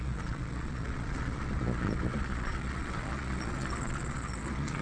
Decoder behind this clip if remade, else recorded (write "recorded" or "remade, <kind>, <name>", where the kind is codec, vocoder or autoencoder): remade, vocoder, Vocos